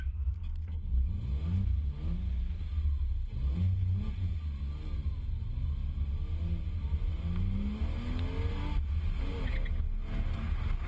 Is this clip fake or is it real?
real